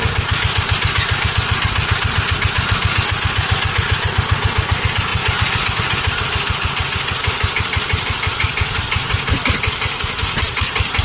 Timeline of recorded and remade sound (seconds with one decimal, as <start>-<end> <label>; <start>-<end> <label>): 0.0-11.0 recorded